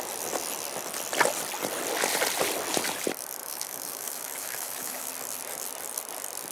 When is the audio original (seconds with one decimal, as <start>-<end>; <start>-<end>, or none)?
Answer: 0.0-3.4; 5.1-6.5